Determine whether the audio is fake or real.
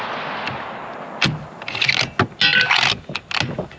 real